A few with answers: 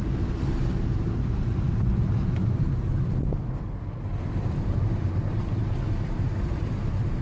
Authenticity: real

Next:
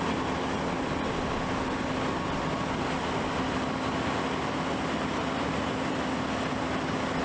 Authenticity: real